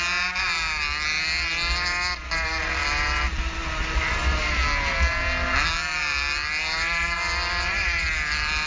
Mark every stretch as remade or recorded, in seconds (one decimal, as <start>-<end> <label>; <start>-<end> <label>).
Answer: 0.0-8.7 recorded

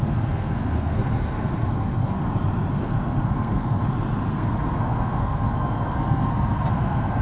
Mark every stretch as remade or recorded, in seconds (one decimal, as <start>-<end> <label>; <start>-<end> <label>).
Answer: 0.0-2.2 remade; 2.2-2.7 recorded; 2.7-3.8 remade; 3.8-4.3 recorded; 4.3-7.2 remade

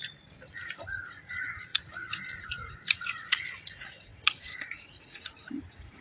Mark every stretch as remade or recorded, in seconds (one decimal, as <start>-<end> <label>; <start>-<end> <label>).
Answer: 0.0-0.5 recorded; 0.5-6.0 remade

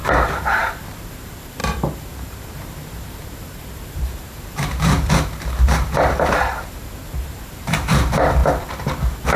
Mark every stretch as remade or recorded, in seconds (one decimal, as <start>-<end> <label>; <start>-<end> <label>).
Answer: 0.0-8.4 remade; 8.4-9.4 recorded

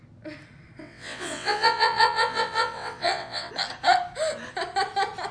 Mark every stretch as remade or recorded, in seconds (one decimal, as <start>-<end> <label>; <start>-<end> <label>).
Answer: 0.0-0.8 recorded; 0.8-3.5 remade; 3.5-5.3 recorded

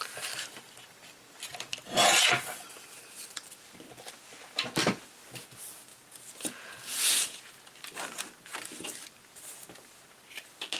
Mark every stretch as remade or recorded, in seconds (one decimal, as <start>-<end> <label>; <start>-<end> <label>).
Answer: 0.0-5.9 recorded; 5.9-7.5 remade; 7.5-10.8 recorded

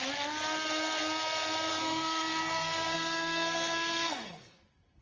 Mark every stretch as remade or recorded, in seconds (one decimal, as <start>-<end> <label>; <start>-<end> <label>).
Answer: 0.0-1.7 recorded; 1.7-5.0 remade